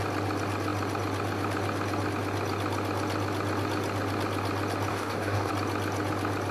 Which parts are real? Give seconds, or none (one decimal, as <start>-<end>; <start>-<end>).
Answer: 0.0-4.9; 5.5-6.5